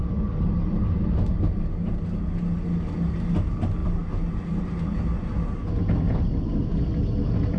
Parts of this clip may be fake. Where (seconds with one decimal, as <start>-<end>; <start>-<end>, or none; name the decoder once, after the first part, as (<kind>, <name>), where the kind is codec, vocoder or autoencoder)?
none